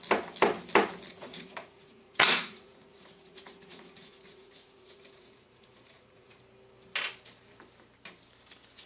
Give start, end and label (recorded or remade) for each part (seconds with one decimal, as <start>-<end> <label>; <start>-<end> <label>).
0.0-1.1 recorded; 1.1-6.4 remade; 6.4-8.9 recorded